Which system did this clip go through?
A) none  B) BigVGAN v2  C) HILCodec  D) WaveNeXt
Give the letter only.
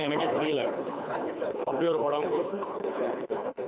C